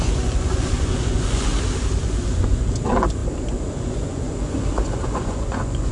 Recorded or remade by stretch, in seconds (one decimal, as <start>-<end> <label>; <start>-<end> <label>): 0.0-1.5 remade; 1.5-2.0 recorded; 2.0-5.9 remade